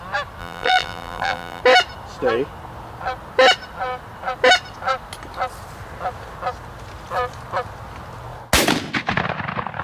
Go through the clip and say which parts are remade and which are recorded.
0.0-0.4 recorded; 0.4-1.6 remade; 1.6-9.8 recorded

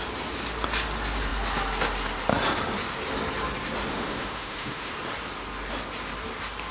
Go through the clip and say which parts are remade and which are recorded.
0.0-3.9 recorded; 3.9-4.9 remade; 4.9-6.7 recorded

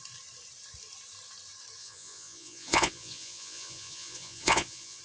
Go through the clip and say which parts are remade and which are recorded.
0.0-1.8 recorded; 1.8-5.0 remade

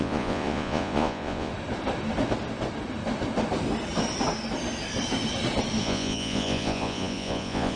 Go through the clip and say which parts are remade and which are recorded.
0.0-1.5 remade; 1.5-5.8 recorded; 5.8-7.8 remade

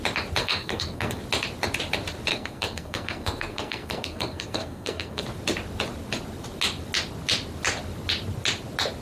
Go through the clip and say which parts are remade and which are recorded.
0.0-0.4 recorded; 0.4-1.2 remade; 1.2-2.3 recorded; 2.3-5.2 remade; 5.2-9.0 recorded

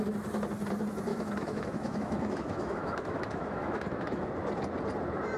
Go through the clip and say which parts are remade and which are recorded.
0.0-1.1 recorded; 1.1-4.3 remade; 4.3-5.4 recorded

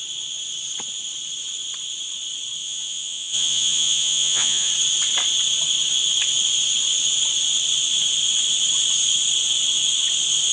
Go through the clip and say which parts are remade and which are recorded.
0.0-2.6 recorded; 2.6-4.7 remade; 4.7-10.5 recorded

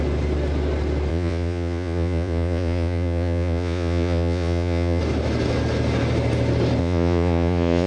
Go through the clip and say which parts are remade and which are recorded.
0.0-1.1 recorded; 1.1-5.0 remade; 5.0-6.8 recorded; 6.8-7.9 remade